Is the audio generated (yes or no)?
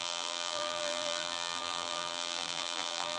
yes